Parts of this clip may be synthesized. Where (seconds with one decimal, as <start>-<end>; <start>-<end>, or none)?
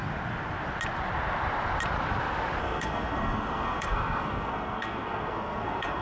2.6-6.0